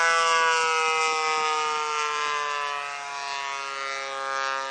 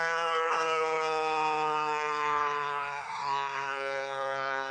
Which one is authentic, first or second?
first